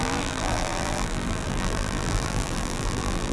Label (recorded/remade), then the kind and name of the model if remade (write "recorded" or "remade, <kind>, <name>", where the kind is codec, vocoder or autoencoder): remade, vocoder, BigVGAN v2